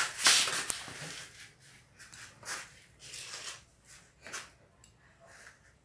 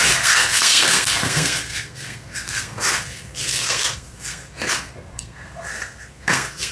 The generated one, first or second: second